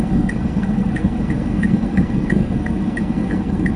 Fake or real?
fake